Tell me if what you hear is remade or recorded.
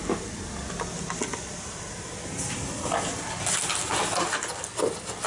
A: recorded